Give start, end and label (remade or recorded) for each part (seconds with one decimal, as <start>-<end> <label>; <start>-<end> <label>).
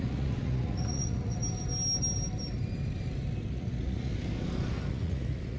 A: 0.0-1.4 remade; 1.4-3.5 recorded; 3.5-4.1 remade; 4.1-4.9 recorded; 4.9-5.6 remade